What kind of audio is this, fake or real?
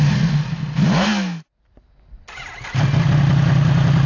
real